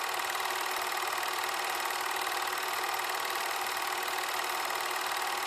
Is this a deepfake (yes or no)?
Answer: no